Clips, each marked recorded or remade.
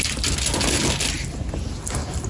recorded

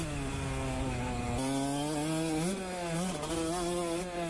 recorded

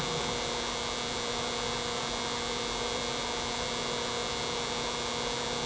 recorded